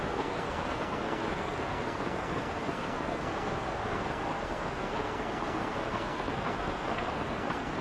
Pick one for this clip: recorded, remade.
remade